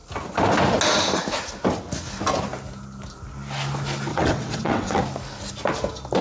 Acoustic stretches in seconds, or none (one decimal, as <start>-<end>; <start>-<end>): 0.0-4.1; 5.0-6.2